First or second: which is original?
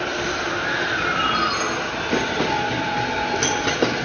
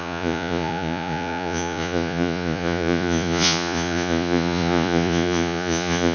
first